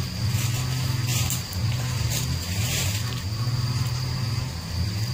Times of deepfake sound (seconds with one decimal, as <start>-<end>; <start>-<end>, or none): 1.1-4.2